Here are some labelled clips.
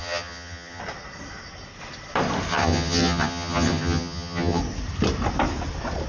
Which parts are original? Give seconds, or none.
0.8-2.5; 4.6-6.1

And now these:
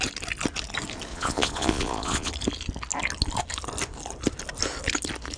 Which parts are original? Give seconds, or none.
0.0-1.1; 2.3-5.4